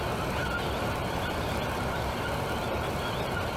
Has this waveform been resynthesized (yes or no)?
no